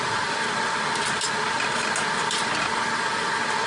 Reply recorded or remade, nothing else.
recorded